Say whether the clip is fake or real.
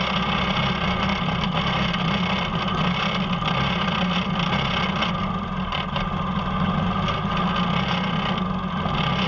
real